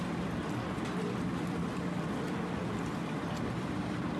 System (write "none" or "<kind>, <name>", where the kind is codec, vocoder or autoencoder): none